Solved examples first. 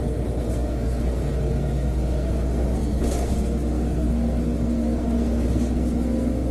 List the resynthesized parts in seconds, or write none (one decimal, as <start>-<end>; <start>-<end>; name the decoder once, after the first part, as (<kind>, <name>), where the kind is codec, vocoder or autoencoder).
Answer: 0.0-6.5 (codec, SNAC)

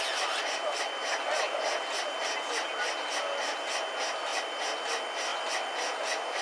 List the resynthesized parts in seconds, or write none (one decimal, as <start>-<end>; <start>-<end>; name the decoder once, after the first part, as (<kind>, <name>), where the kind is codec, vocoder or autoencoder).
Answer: none

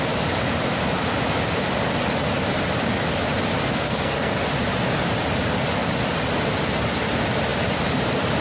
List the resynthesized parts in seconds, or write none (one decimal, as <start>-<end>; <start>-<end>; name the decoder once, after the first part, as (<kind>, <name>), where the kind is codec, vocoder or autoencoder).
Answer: 3.7-4.3 (codec, SNAC)